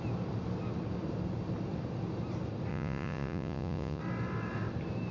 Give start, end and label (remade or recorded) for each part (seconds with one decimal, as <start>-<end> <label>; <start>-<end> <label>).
0.0-2.7 recorded; 2.7-4.0 remade; 4.0-5.1 recorded